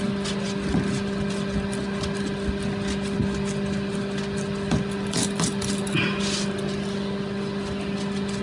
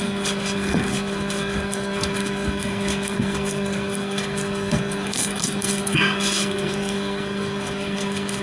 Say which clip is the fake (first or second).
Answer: second